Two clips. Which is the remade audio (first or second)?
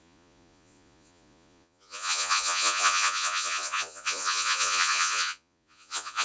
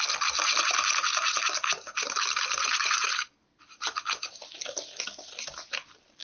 first